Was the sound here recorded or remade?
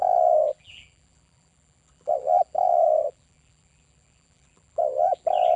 remade